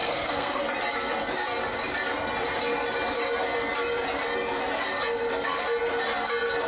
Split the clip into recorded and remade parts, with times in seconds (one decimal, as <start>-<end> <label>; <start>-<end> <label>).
0.0-0.6 remade; 0.6-6.7 recorded